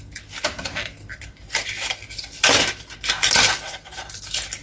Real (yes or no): yes